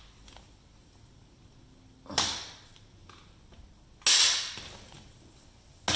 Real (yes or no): yes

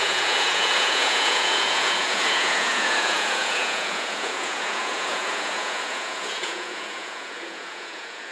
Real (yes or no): no